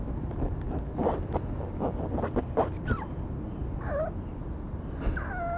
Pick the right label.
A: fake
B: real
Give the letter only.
B